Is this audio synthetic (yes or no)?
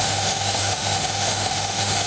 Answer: yes